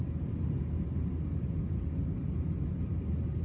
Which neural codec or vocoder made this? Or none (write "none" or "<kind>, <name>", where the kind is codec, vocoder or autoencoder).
none